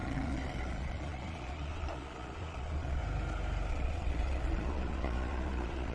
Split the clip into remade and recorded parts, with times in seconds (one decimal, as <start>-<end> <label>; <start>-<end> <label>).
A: 0.0-3.0 remade; 3.0-3.7 recorded; 3.7-5.9 remade